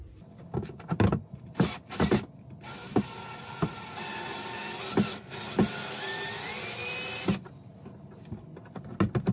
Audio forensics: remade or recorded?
recorded